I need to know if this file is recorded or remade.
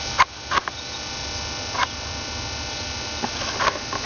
recorded